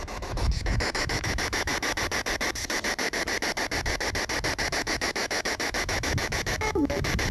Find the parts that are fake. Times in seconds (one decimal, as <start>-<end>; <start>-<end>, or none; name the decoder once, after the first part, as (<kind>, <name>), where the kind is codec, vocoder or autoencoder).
0.0-1.7 (autoencoder, DAC-VAE); 4.7-7.3